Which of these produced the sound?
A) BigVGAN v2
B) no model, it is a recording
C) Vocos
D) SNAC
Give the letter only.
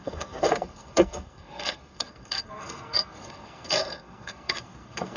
D